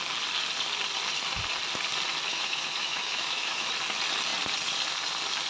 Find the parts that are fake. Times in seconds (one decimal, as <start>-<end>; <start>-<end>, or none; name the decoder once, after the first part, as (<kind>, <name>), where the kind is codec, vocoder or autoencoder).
2.3-3.7 (autoencoder, DAC-VAE)